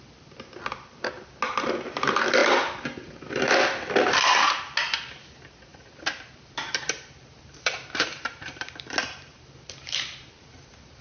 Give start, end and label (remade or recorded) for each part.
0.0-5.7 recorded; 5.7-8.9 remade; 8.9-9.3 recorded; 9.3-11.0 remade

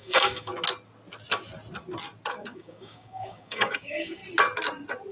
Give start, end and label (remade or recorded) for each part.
0.0-0.5 remade; 0.5-2.3 recorded; 2.3-4.2 remade; 4.2-5.1 recorded

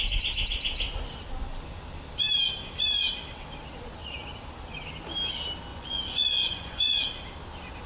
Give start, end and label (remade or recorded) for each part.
0.0-5.7 recorded; 5.7-7.0 remade; 7.0-7.9 recorded

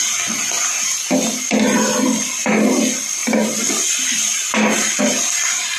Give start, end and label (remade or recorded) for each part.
0.0-5.8 recorded

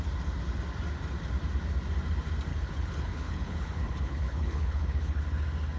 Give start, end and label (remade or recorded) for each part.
0.0-2.5 recorded; 2.5-5.2 remade; 5.2-5.8 recorded

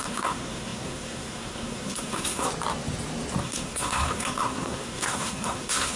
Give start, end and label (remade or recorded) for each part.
0.0-2.5 remade; 2.5-3.4 recorded; 3.4-6.0 remade

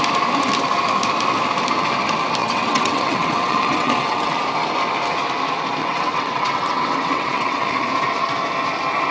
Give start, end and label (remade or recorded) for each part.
0.0-2.4 recorded; 2.4-4.4 remade; 4.4-5.8 recorded; 5.8-7.9 remade; 7.9-9.1 recorded

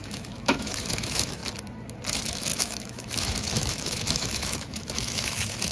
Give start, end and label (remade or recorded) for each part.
0.0-1.4 remade; 1.4-2.1 recorded; 2.1-5.7 remade